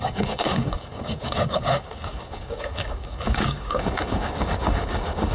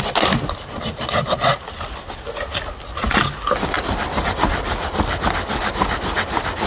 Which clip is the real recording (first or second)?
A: second